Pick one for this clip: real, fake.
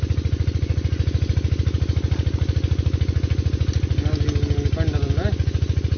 real